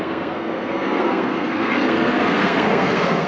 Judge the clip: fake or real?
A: fake